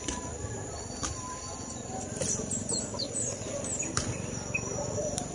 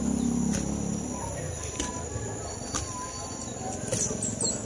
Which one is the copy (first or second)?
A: first